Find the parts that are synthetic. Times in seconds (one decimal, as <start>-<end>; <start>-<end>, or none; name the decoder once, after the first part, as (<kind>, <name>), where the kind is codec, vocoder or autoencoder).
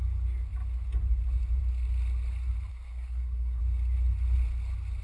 2.7-3.6 (codec, SNAC)